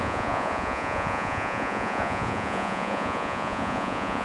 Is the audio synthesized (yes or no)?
yes